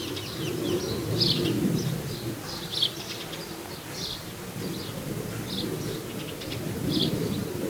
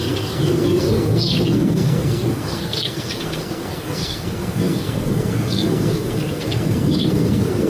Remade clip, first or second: second